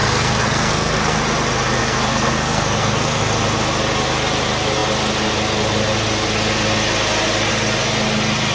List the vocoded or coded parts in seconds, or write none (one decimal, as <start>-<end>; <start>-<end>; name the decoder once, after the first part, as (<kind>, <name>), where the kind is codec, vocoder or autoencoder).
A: 0.0-1.2 (codec, SNAC); 1.8-3.2